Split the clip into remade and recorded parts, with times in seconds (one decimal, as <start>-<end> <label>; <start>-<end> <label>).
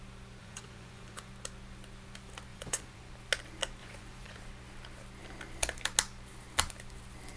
0.0-0.4 recorded; 0.4-1.3 remade; 1.3-2.5 recorded; 2.5-3.1 remade; 3.1-3.8 recorded; 3.8-4.4 remade; 4.4-7.4 recorded